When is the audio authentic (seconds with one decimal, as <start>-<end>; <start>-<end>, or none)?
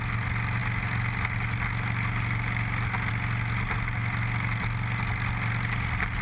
0.0-6.2